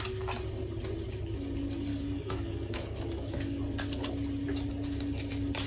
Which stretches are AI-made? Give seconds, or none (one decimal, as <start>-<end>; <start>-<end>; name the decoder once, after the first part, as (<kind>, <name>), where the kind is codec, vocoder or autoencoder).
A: 1.9-3.6 (codec, DAC)